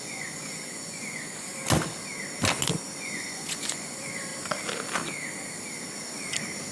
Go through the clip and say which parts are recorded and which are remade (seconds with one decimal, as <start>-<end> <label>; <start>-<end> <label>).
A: 0.0-1.6 remade; 1.6-3.0 recorded; 3.0-4.3 remade; 4.3-6.7 recorded